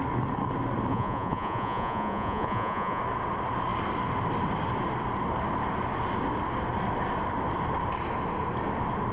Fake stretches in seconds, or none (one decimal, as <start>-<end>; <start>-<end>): 0.9-3.0